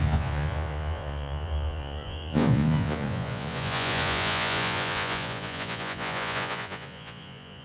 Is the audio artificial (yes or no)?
yes